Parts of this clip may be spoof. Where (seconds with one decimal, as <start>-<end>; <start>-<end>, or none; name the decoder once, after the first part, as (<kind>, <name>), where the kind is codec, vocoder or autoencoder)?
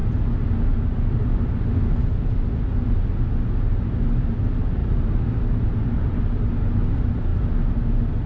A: 4.8-6.2 (vocoder, BigVGAN v2)